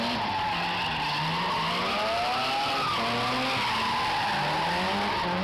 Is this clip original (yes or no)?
yes